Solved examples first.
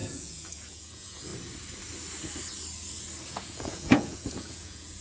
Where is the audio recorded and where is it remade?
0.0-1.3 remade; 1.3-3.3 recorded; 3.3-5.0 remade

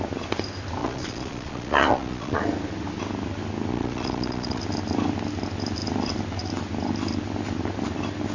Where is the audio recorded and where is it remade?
0.0-0.8 recorded; 0.8-2.4 remade; 2.4-3.7 recorded; 3.7-4.6 remade; 4.6-8.3 recorded

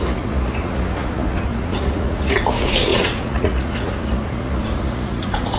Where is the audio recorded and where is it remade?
0.0-5.6 remade

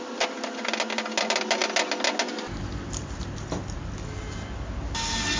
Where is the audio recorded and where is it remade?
0.0-5.4 recorded

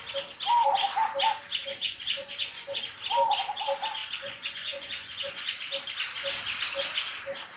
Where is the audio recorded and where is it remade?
0.0-1.7 recorded; 1.7-2.8 remade; 2.8-4.0 recorded; 4.0-5.6 remade; 5.6-7.6 recorded